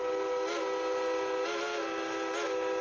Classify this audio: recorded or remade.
recorded